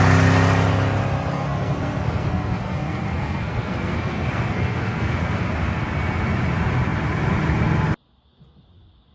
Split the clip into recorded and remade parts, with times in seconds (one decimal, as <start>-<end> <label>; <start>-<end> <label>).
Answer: 0.0-1.3 recorded; 1.3-5.4 remade; 5.4-9.1 recorded